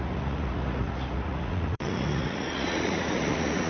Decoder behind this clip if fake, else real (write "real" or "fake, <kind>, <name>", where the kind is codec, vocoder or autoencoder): fake, vocoder, Vocos